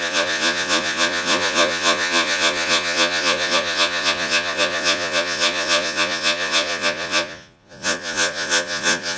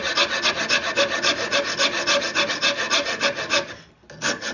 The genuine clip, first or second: second